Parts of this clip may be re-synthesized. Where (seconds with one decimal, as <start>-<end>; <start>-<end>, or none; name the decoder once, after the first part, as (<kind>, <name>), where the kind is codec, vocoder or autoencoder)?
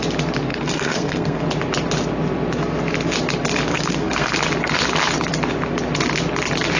0.5-1.4 (codec, SNAC); 3.7-4.3